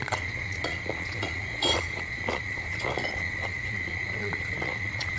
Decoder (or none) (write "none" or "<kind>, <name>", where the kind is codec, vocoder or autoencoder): vocoder, Vocos